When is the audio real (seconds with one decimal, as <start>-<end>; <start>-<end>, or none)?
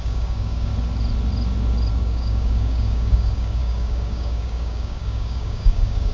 0.7-1.9